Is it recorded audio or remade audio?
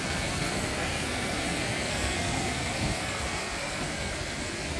remade